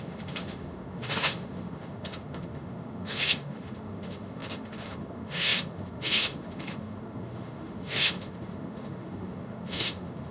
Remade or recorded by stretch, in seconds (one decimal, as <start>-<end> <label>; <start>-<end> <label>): 0.0-10.3 remade